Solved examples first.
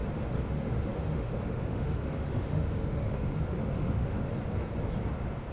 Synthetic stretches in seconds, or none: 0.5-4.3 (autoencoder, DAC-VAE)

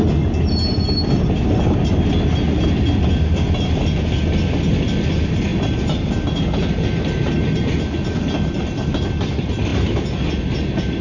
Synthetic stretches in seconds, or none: none

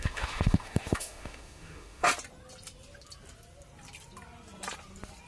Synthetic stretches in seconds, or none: 0.0-2.1 (autoencoder, DAC-VAE)

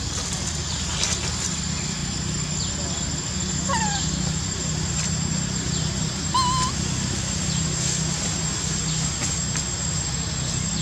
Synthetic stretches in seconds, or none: none

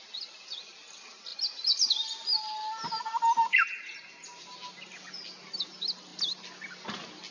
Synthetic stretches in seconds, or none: none

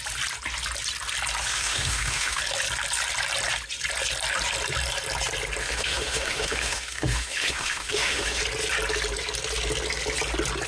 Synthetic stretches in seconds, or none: 1.5-2.4 (autoencoder, DAC-VAE); 5.6-8.4

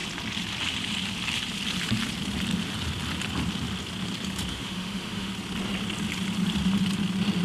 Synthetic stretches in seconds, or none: 4.5-5.3 (autoencoder, DAC-VAE)